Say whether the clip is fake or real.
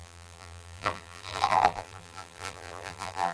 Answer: fake